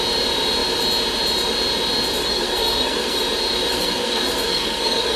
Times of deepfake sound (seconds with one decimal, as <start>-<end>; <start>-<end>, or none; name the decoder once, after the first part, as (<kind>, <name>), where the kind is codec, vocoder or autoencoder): 2.2-3.2 (codec, SNAC); 3.7-5.2